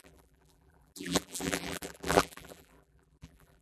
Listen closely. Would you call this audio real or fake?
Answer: fake